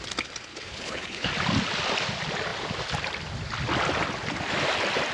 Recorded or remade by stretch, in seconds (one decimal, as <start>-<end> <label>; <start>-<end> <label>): 0.0-0.5 recorded; 0.5-1.3 remade; 1.3-5.1 recorded